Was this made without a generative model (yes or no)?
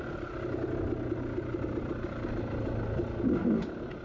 yes